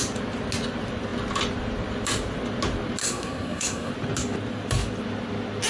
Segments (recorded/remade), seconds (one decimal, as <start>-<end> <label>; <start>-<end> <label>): 0.0-3.0 recorded; 3.0-3.9 remade; 3.9-5.7 recorded